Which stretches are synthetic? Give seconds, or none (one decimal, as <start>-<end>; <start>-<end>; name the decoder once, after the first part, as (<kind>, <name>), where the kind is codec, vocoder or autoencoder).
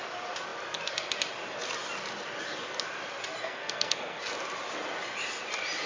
3.4-4.2 (codec, SNAC)